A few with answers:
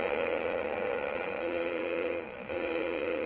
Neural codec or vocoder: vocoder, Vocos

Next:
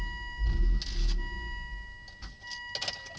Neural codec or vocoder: none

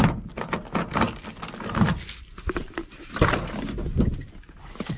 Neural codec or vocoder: none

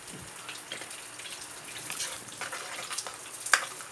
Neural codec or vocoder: none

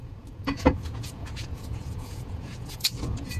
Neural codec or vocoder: vocoder, Vocos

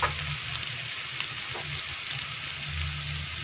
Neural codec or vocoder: none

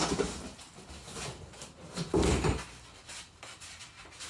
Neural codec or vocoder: none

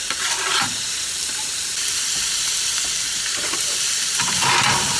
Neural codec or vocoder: none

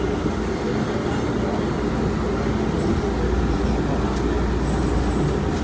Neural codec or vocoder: none